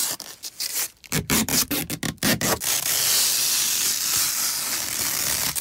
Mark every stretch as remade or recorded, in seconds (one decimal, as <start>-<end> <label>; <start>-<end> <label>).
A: 0.0-0.5 recorded; 0.5-1.5 remade; 1.5-4.5 recorded; 4.5-5.6 remade